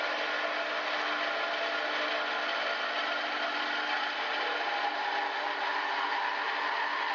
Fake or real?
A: real